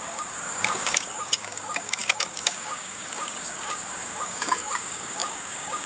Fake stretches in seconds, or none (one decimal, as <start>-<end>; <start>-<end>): 0.0-5.9